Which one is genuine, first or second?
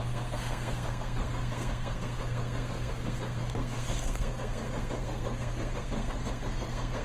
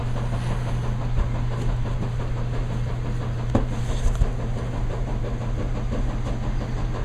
second